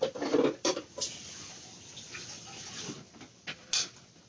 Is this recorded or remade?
recorded